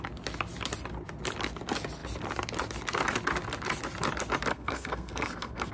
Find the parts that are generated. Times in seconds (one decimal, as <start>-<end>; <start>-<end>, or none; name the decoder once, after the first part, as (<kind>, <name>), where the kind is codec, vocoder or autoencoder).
4.5-5.7 (codec, SNAC)